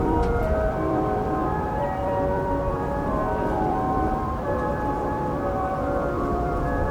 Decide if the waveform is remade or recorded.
remade